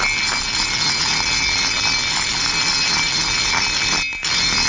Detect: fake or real real